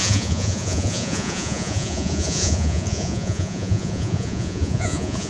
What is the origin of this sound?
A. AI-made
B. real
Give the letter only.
A